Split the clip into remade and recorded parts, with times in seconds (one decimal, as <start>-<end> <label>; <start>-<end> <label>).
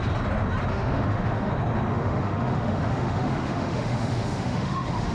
0.0-0.7 recorded; 0.7-1.5 remade; 1.5-1.9 recorded; 1.9-5.1 remade